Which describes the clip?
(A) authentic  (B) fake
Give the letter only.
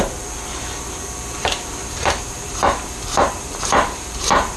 B